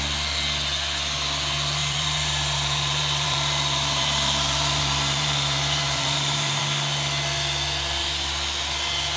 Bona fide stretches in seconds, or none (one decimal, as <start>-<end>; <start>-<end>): 0.0-1.8; 6.6-9.2